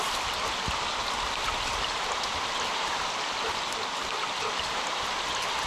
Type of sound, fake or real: real